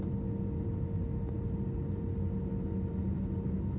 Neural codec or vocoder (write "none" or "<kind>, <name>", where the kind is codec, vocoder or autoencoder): none